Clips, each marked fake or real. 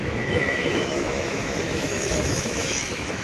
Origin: fake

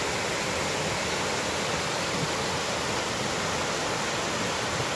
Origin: real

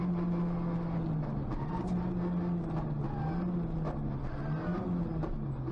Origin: real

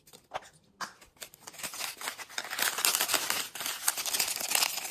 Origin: real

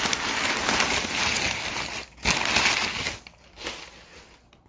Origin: real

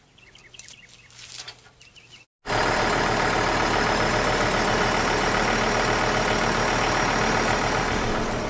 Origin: real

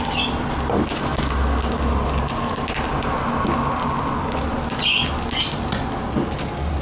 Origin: real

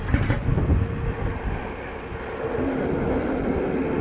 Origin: real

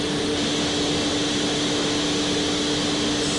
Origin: real